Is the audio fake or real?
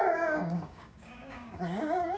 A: fake